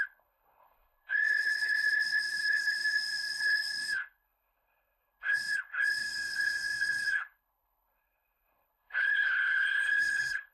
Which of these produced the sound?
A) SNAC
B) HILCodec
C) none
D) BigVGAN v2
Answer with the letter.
B